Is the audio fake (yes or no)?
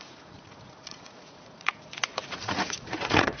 yes